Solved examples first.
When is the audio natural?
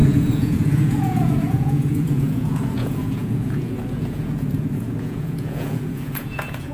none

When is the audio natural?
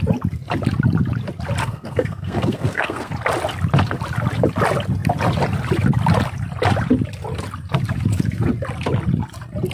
0.0-1.6; 3.1-9.7